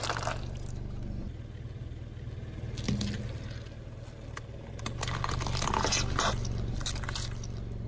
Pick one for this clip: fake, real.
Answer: real